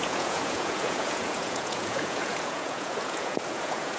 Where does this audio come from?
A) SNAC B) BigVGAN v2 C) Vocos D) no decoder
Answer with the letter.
C